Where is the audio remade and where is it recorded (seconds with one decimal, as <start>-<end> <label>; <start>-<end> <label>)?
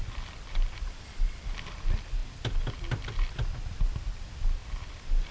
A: 0.0-5.3 recorded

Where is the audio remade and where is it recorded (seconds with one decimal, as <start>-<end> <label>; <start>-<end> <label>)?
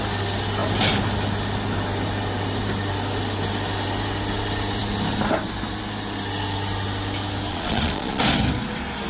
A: 0.0-7.5 recorded; 7.5-8.2 remade; 8.2-9.1 recorded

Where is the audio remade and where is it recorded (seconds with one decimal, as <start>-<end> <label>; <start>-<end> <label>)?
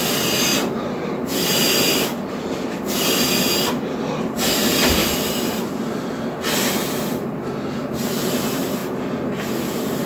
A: 0.0-10.1 recorded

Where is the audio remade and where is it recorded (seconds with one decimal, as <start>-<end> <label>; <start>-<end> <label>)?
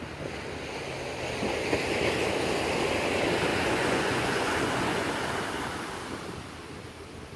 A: 0.0-3.5 recorded; 3.5-5.1 remade; 5.1-7.4 recorded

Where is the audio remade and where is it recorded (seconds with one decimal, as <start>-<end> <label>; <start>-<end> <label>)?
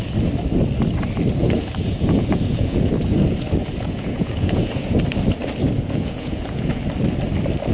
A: 0.0-1.4 recorded; 1.4-2.9 remade; 2.9-3.6 recorded; 3.6-4.9 remade; 4.9-5.6 recorded; 5.6-6.8 remade; 6.8-7.7 recorded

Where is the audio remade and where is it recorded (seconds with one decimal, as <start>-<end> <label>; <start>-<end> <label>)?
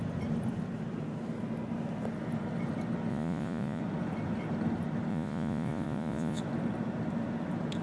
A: 0.0-3.1 recorded; 3.1-3.8 remade; 3.8-5.1 recorded; 5.1-6.4 remade; 6.4-7.8 recorded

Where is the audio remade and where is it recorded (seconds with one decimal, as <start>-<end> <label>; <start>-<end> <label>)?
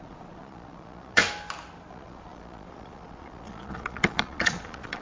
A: 0.0-1.2 remade; 1.2-1.9 recorded; 1.9-5.0 remade